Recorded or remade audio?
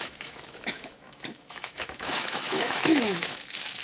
remade